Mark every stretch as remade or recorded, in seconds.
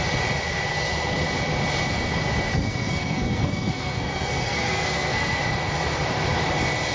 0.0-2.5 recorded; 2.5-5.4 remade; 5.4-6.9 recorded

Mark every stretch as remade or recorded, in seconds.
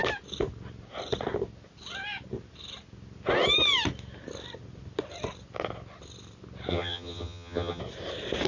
0.0-6.7 recorded; 6.7-7.8 remade; 7.8-8.5 recorded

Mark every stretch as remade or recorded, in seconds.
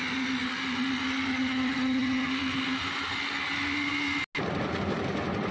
0.0-1.3 recorded; 1.3-2.3 remade; 2.3-5.5 recorded